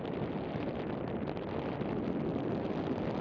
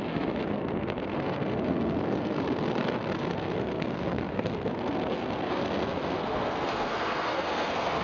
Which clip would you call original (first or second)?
first